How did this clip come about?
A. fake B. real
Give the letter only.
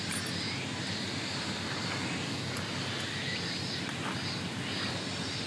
B